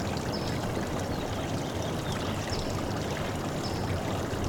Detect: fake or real real